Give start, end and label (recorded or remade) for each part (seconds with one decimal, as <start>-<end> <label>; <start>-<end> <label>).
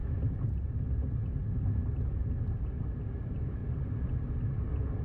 0.0-5.0 recorded